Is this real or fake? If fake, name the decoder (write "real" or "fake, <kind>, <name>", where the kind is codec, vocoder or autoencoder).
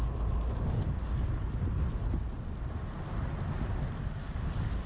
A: real